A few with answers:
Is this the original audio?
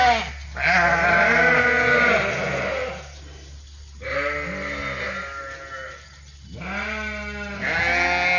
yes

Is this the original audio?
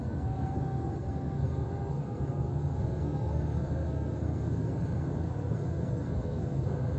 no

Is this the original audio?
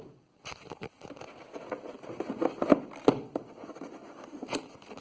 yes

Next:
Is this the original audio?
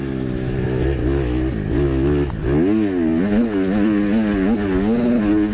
yes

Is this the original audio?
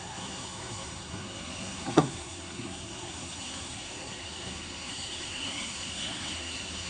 no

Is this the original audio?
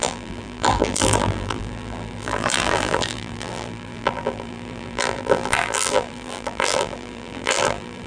no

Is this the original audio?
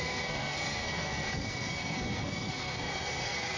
no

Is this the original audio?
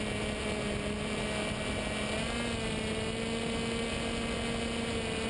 yes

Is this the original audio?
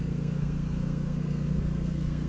no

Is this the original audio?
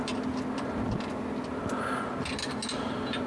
yes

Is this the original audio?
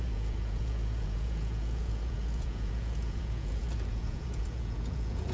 no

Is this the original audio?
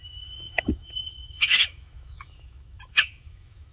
no